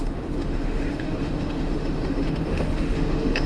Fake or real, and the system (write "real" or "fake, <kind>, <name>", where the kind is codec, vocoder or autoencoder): fake, autoencoder, DAC-VAE